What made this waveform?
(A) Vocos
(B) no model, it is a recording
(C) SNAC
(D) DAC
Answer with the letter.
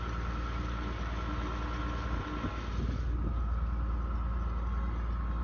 B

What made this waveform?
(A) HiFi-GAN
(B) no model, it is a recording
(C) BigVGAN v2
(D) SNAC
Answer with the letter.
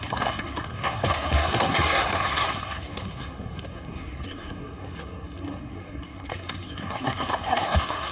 D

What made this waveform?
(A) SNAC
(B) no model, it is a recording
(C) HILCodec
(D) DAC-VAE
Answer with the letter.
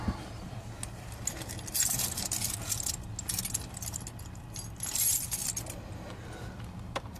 B